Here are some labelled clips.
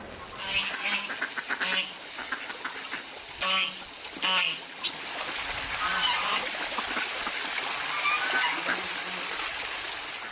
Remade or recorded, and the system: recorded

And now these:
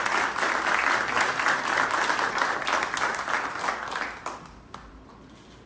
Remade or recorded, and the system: recorded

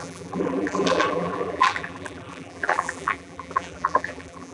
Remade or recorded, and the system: remade, vocoder, BigVGAN v2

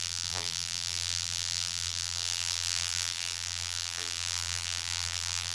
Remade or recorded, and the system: remade, vocoder, BigVGAN v2